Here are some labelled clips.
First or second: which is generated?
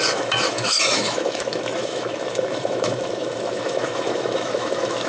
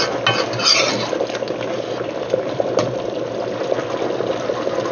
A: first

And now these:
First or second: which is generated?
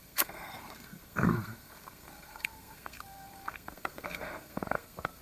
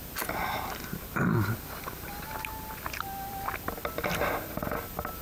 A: first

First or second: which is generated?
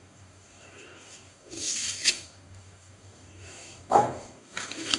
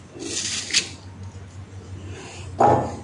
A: first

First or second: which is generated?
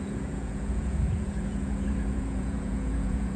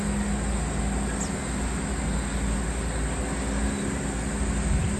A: first